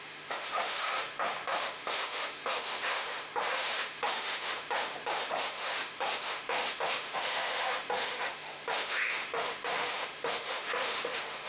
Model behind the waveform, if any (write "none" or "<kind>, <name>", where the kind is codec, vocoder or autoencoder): autoencoder, DAC-VAE